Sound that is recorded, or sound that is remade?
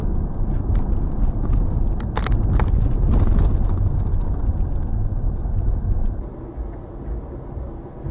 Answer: recorded